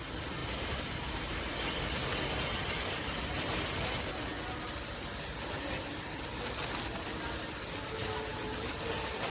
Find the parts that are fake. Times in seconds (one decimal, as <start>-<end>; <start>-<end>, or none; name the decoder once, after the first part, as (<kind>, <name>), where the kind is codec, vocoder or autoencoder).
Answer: none